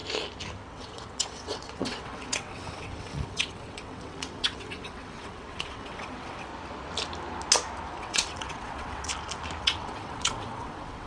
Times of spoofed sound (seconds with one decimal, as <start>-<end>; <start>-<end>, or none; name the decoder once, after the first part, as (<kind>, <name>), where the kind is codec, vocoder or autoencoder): 0.7-6.5 (vocoder, WaveNeXt); 8.0-9.1; 9.6-11.1